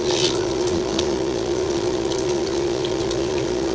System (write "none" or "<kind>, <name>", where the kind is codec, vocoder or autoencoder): vocoder, Vocos